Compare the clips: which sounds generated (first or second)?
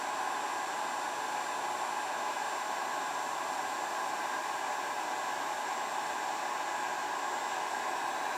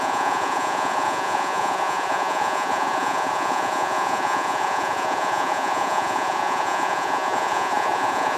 second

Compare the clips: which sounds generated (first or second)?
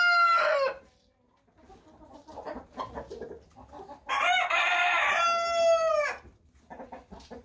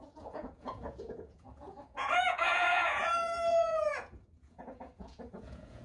second